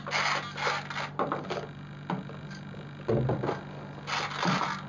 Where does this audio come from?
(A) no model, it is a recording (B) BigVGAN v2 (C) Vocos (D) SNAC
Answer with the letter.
A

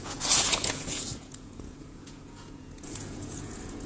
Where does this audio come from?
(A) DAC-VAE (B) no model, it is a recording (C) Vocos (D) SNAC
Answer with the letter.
C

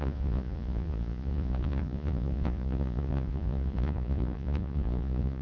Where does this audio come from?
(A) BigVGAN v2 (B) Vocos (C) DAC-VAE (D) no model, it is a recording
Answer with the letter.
B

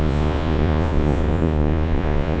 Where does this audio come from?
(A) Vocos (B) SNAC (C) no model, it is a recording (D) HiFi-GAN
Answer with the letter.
A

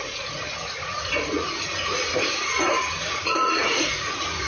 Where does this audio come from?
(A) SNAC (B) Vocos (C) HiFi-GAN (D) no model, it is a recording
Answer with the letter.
B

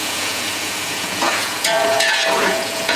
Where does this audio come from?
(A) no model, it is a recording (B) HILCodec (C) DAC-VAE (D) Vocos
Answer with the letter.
D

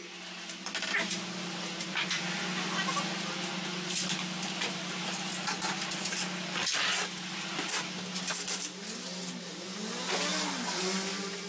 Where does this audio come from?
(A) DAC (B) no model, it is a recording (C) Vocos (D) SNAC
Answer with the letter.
B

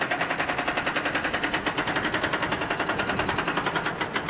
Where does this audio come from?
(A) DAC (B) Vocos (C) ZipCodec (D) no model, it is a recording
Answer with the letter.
D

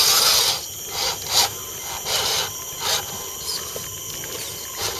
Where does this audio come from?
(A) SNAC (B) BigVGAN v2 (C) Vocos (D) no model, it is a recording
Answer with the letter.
D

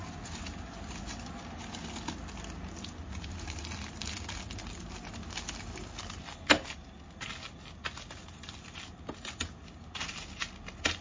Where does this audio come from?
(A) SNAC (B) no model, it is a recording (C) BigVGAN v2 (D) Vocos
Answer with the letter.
B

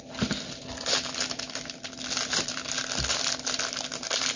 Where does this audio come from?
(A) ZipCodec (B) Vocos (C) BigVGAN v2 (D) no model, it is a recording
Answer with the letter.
D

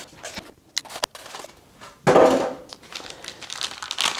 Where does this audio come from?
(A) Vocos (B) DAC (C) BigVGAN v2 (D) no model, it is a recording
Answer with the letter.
D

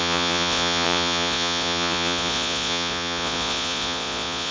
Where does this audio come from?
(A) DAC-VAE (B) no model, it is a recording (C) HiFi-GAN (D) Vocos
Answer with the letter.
D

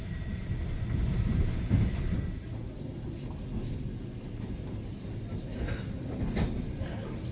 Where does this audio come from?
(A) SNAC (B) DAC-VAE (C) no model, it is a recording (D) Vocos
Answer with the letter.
C